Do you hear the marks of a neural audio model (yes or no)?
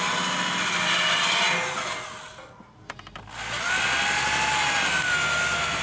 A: no